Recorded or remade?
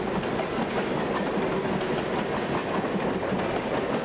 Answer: recorded